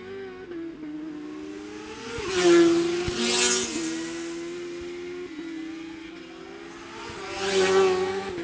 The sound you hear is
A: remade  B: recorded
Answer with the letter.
B